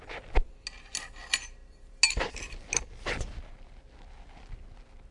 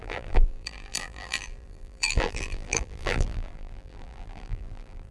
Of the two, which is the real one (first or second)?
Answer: first